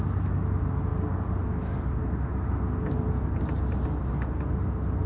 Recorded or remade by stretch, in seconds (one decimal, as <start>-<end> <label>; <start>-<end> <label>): 0.0-5.1 recorded